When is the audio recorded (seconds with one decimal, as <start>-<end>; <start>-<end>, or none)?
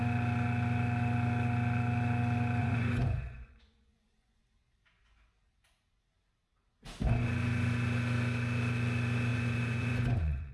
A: 0.0-2.6; 4.4-9.3